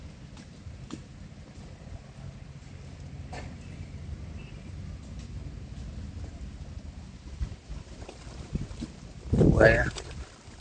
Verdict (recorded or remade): recorded